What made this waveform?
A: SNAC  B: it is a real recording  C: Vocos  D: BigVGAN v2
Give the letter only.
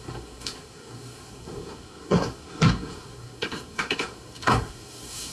A